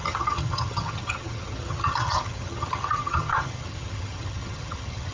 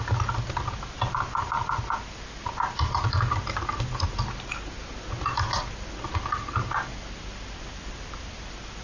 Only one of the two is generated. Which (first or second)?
first